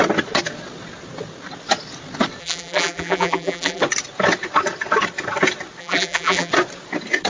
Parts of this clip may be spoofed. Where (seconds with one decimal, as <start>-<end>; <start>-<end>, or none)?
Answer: 2.4-3.8; 5.8-6.5